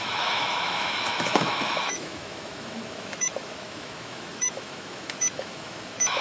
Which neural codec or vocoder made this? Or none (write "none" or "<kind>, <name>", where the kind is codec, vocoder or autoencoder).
autoencoder, DAC-VAE